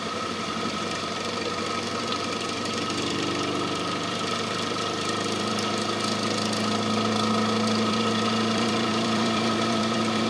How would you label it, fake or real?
fake